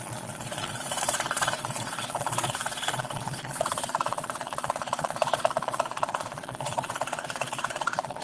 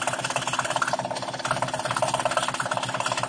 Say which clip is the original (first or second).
second